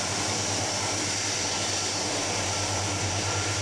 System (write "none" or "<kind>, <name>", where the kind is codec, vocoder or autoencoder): none